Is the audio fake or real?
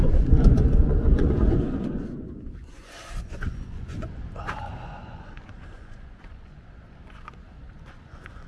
fake